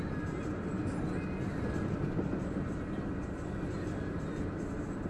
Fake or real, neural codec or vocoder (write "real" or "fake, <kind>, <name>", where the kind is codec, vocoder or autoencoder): real